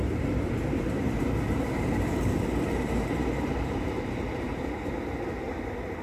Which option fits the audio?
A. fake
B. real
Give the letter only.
A